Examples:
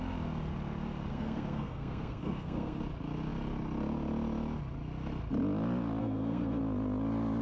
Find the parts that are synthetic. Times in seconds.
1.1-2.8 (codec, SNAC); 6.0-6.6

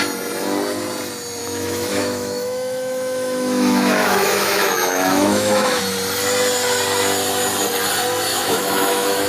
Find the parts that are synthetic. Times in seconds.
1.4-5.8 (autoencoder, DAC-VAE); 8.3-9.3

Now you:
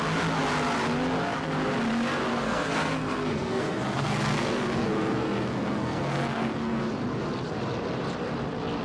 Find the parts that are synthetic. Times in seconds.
2.3-6.9 (codec, SNAC)

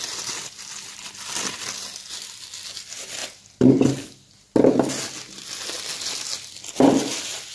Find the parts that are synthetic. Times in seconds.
none

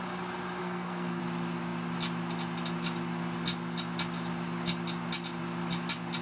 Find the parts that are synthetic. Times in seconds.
0.6-1.2 (codec, SNAC)

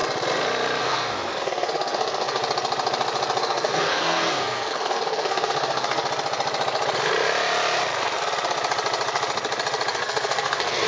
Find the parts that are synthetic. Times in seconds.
0.8-2.4 (codec, SNAC); 3.4-6.0; 9.9-10.9